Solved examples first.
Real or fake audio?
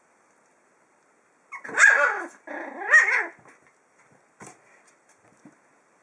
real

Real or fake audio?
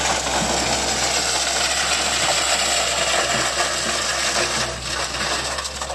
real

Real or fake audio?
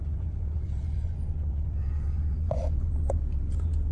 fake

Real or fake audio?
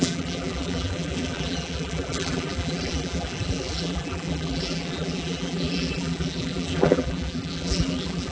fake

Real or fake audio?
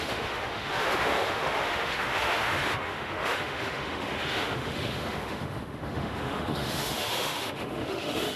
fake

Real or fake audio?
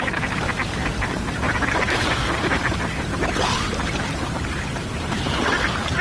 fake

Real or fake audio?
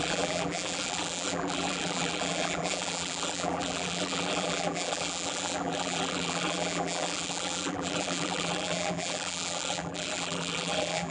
fake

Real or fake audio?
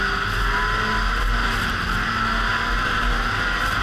real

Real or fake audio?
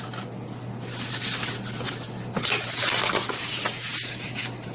real